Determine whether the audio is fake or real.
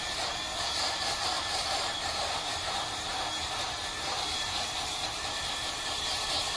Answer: fake